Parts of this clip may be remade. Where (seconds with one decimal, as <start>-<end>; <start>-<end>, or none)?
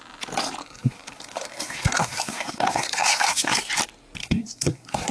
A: 0.6-3.7; 4.2-5.1